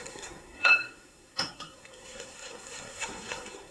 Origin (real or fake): fake